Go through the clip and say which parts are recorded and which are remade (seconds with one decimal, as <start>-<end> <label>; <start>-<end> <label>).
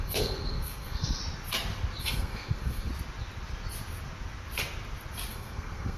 0.0-1.2 remade; 1.2-2.0 recorded; 2.0-2.9 remade; 2.9-5.3 recorded; 5.3-6.0 remade